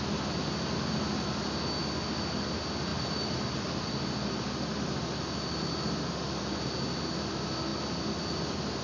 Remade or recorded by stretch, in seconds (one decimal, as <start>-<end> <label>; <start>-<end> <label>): 0.0-2.9 recorded; 2.9-3.9 remade; 3.9-8.8 recorded